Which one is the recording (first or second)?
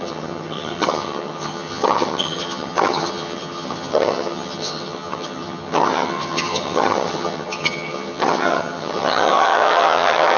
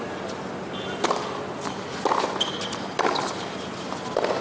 second